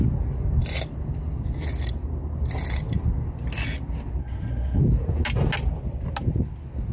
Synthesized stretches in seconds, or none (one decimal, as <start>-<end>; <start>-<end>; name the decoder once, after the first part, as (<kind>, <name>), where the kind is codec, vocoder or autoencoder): 4.2-4.8 (codec, SNAC)